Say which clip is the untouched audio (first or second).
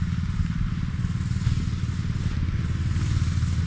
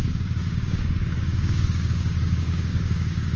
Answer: first